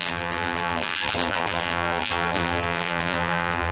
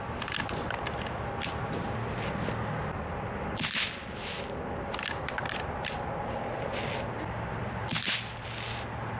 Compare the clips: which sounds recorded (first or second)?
second